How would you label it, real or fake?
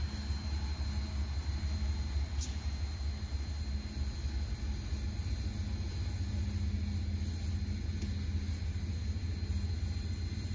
real